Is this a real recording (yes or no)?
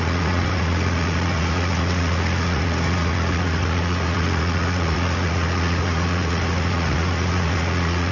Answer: no